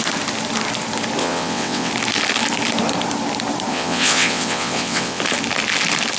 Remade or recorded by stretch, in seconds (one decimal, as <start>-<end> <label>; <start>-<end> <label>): 0.0-1.2 recorded; 1.2-1.9 remade; 1.9-3.7 recorded; 3.7-5.2 remade; 5.2-6.2 recorded